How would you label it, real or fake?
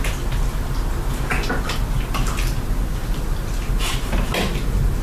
real